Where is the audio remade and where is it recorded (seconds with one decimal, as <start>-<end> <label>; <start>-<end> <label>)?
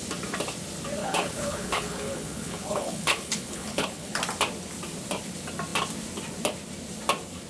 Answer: 0.0-1.0 recorded; 1.0-4.2 remade; 4.2-7.5 recorded